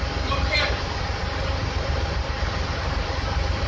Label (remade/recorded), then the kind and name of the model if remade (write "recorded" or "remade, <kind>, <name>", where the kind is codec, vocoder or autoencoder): remade, vocoder, BigVGAN v2